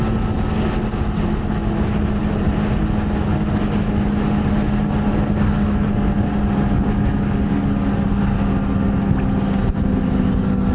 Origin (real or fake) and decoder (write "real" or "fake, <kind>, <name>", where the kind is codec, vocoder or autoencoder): real